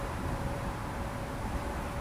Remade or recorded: remade